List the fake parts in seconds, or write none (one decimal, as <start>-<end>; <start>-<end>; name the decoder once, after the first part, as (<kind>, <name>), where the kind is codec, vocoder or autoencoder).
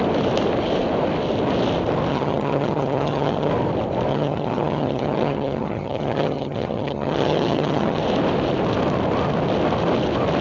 2.1-3.5 (vocoder, HiFi-GAN); 4.1-8.0